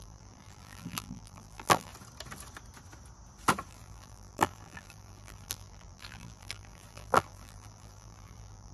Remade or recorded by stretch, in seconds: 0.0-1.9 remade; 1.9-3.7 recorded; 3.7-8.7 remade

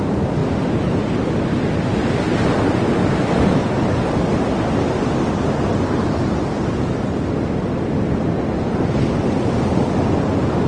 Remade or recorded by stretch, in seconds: 0.0-10.7 recorded

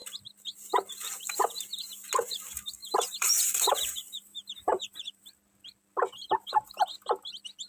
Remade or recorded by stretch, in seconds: 0.0-2.8 recorded; 2.8-5.2 remade; 5.2-7.7 recorded

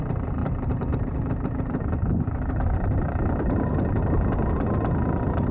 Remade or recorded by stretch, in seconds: 0.0-0.4 recorded; 0.4-3.7 remade; 3.7-5.5 recorded

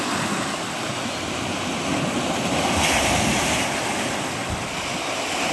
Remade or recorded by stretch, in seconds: 0.0-5.5 recorded

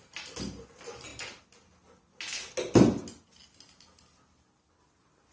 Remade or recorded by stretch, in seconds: 0.0-5.3 recorded

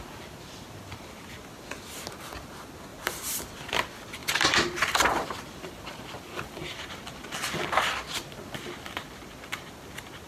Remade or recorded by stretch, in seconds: 0.0-2.9 recorded; 2.9-3.4 remade; 3.4-4.2 recorded; 4.2-6.8 remade; 6.8-10.3 recorded

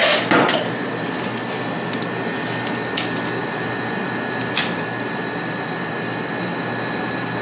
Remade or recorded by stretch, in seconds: 0.0-3.4 recorded; 3.4-4.1 remade; 4.1-4.6 recorded; 4.6-6.3 remade; 6.3-7.4 recorded